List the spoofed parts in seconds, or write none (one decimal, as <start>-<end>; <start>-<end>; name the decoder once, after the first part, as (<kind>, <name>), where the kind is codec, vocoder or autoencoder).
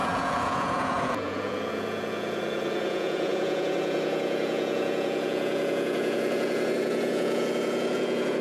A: 0.0-8.4 (vocoder, Vocos)